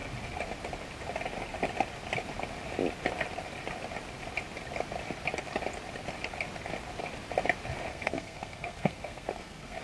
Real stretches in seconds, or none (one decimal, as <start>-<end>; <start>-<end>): 0.0-7.9